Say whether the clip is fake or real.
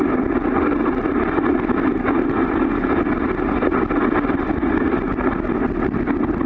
real